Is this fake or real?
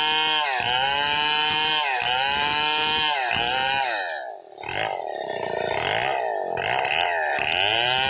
real